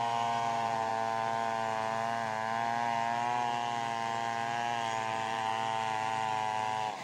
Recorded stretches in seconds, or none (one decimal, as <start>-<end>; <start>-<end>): 0.9-5.1; 5.5-7.0